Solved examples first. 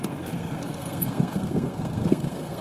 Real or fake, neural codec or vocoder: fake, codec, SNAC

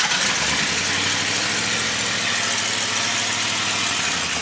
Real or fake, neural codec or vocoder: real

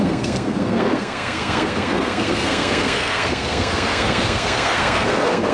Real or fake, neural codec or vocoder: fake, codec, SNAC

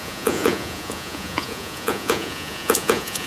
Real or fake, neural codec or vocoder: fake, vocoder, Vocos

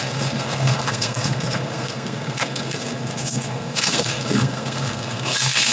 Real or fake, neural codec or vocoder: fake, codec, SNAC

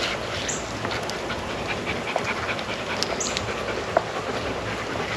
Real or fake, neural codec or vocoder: real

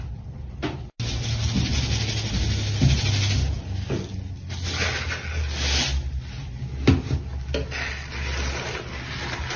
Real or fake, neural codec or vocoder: real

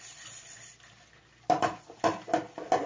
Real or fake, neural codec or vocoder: real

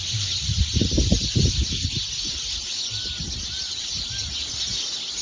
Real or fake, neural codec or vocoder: real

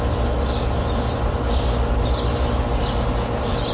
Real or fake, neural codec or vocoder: real